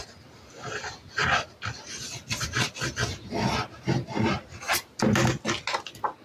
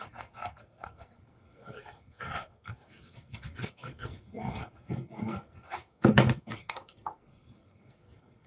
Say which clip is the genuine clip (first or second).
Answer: first